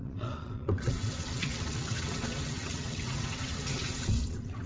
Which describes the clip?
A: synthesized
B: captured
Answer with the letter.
A